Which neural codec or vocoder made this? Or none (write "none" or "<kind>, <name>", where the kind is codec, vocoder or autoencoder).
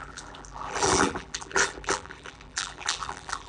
vocoder, BigVGAN v2